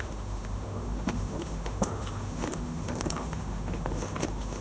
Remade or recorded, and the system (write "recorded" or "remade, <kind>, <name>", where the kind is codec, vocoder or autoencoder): remade, autoencoder, DAC-VAE